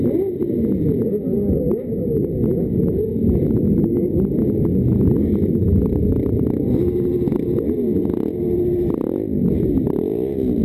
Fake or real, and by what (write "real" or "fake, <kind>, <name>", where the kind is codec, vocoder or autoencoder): real